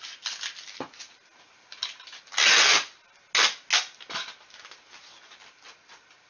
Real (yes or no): yes